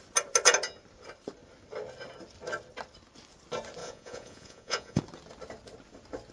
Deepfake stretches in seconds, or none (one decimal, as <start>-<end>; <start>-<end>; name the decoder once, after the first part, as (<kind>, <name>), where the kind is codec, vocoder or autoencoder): 3.8-5.0 (vocoder, Vocos)